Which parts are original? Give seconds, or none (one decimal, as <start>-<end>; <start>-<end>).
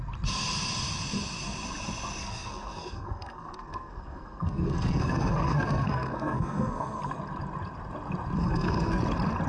0.0-2.2; 7.0-8.4; 9.0-9.5